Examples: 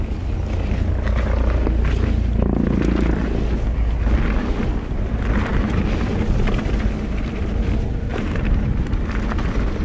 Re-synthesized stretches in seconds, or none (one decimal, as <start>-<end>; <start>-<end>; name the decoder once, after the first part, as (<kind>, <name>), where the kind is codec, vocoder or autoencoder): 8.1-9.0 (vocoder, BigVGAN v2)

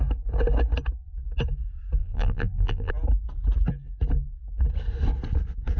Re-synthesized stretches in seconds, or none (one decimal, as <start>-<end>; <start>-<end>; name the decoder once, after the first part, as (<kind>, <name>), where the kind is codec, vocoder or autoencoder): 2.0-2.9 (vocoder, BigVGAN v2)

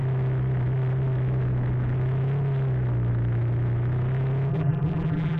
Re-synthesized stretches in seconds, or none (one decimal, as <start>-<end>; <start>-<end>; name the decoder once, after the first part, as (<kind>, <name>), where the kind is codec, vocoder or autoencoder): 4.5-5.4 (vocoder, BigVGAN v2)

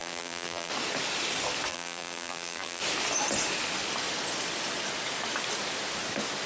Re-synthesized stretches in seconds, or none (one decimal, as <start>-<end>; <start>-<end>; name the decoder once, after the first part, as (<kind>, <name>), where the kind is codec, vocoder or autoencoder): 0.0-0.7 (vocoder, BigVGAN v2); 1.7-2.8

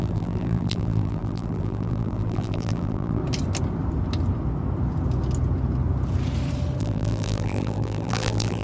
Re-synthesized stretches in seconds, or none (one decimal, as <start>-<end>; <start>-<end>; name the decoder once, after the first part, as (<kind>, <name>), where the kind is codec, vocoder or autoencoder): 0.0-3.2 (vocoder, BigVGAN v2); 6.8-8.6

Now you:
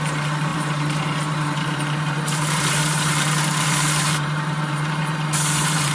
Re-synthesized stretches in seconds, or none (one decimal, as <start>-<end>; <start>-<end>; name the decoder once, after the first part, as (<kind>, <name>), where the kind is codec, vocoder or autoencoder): 0.0-5.9 (vocoder, BigVGAN v2)

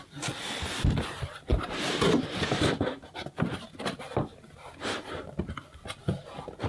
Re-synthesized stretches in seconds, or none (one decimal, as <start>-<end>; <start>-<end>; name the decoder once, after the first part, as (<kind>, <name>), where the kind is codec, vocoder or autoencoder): 1.5-5.2 (vocoder, BigVGAN v2)

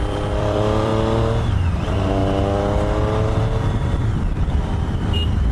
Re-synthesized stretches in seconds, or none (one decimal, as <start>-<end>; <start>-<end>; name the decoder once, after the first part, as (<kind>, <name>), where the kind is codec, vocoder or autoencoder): 0.0-0.9 (vocoder, BigVGAN v2); 1.5-2.2